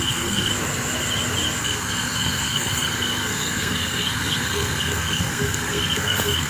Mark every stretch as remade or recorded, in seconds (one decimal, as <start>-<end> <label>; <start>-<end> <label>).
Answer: 0.0-0.5 remade; 0.5-1.6 recorded; 1.6-6.5 remade